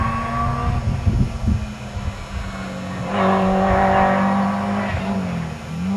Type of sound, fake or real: real